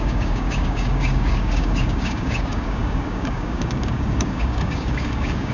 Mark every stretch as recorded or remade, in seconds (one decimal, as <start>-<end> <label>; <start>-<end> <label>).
0.0-5.5 remade